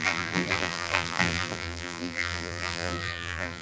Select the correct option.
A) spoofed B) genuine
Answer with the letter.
A